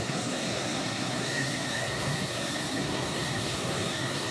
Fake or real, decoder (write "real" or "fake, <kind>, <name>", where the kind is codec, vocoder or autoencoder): fake, codec, SNAC